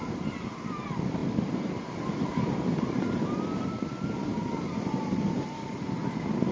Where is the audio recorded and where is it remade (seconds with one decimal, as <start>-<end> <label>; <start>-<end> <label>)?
0.0-2.3 recorded; 2.3-3.8 remade; 3.8-4.3 recorded; 4.3-5.9 remade; 5.9-6.5 recorded